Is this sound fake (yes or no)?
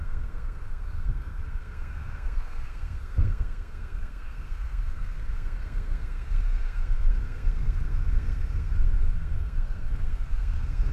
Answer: yes